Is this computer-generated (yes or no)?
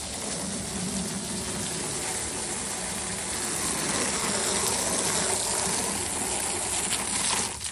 no